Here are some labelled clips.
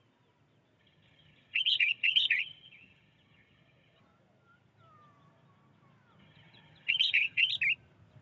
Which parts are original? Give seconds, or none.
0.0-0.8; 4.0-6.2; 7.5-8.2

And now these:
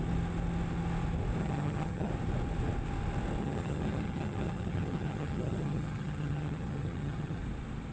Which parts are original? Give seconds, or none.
0.0-1.4; 2.1-3.4; 7.4-7.9

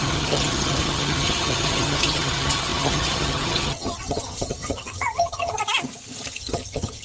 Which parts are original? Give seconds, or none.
5.6-6.3

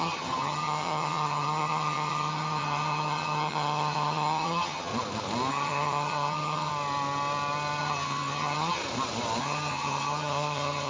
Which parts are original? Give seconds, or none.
4.9-5.5; 6.7-7.8; 8.8-9.4